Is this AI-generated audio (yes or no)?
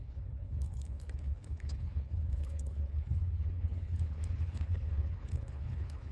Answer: yes